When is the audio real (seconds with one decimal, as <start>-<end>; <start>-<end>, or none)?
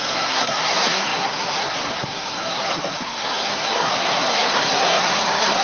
none